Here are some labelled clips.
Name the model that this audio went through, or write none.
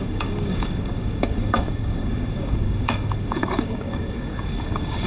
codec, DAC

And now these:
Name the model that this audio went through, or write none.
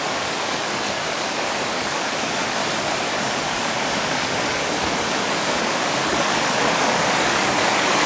codec, DAC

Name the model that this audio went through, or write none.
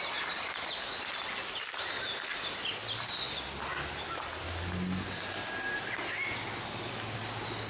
none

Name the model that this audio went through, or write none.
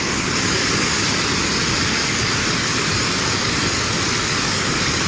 codec, DAC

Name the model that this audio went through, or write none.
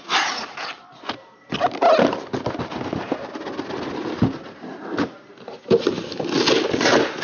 none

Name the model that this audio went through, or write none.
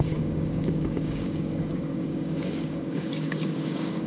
codec, DAC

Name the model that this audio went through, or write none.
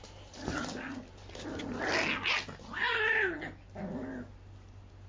none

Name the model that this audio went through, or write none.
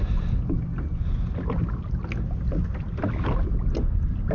none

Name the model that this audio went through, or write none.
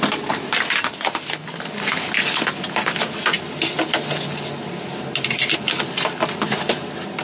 none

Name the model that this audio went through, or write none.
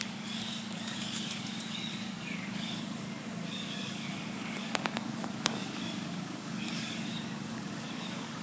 codec, DAC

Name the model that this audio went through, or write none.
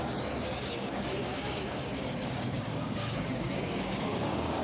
codec, DAC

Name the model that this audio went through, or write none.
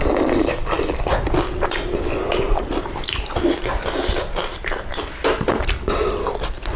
none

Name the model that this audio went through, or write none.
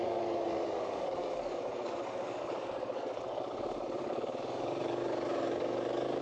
codec, DAC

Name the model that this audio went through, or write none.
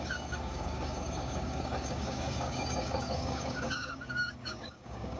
codec, DAC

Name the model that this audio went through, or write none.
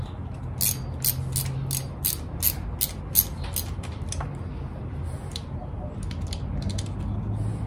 none